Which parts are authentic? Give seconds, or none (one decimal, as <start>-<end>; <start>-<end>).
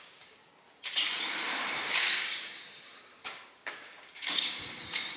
0.5-1.7